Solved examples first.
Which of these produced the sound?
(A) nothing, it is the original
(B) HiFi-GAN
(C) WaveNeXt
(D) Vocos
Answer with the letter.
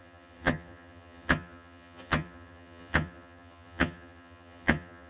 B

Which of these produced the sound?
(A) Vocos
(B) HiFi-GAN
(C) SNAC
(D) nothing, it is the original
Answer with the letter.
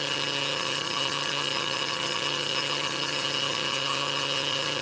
B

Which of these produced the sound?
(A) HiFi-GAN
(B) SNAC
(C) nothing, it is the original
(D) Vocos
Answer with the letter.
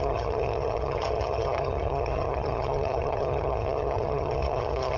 A